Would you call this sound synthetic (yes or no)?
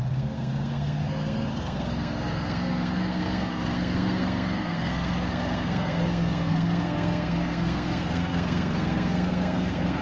yes